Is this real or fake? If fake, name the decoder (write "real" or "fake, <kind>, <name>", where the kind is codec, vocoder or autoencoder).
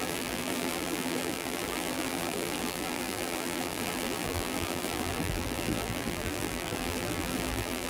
fake, vocoder, BigVGAN v2